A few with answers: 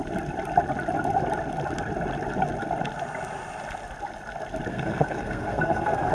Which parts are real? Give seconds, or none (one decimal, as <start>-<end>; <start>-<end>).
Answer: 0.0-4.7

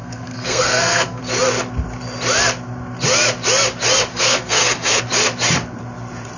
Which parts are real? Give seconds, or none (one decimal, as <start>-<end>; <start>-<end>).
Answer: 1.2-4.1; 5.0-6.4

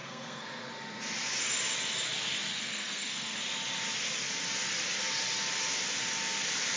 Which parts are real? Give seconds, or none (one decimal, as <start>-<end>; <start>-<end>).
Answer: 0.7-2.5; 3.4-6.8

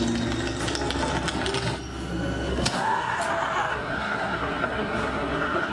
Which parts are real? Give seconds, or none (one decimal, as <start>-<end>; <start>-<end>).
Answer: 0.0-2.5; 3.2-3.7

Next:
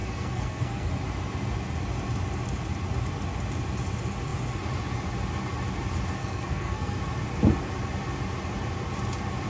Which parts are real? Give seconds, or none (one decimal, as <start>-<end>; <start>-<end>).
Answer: 0.9-6.2; 7.0-9.5